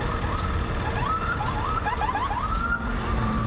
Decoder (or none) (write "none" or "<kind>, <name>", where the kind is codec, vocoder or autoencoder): none